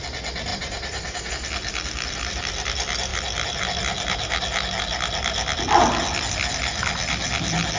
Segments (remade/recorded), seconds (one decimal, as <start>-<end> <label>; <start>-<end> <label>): 0.0-0.5 recorded; 0.5-1.3 remade; 1.3-7.8 recorded